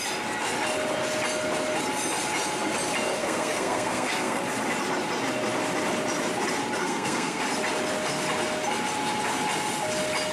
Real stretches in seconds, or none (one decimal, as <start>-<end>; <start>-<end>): 0.0-3.2; 4.4-6.8; 7.4-10.3